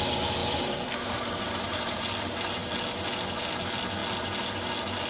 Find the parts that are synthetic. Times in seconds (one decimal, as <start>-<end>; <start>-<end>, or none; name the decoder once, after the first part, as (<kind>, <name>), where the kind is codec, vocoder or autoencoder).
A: 0.4-2.0 (vocoder, BigVGAN v2)